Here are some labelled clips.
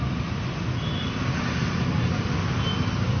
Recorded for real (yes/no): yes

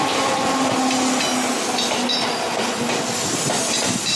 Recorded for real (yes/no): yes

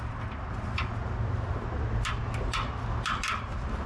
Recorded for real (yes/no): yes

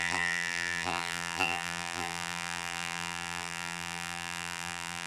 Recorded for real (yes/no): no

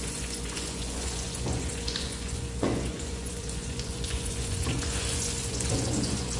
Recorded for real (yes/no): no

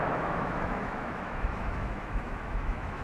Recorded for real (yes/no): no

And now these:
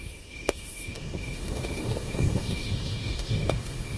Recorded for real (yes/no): no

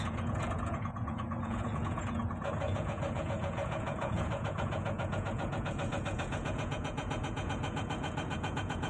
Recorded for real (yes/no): no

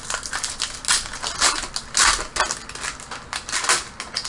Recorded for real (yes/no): yes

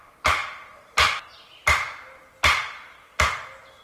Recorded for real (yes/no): yes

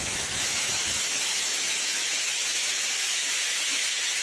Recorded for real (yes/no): no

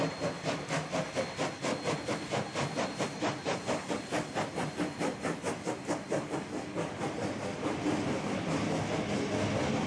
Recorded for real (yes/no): yes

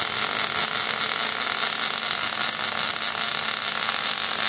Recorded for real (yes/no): yes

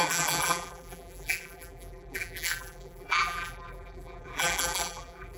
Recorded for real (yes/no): no